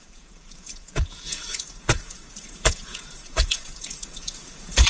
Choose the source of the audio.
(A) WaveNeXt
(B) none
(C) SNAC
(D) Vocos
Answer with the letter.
D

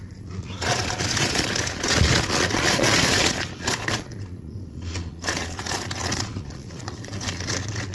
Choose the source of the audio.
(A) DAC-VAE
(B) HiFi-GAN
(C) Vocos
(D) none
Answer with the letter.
C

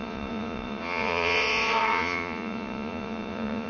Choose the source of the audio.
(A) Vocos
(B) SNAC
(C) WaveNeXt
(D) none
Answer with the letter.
A